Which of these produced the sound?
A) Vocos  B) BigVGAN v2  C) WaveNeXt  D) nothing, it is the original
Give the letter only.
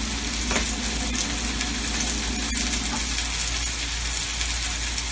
D